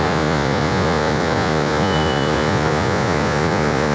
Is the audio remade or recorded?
remade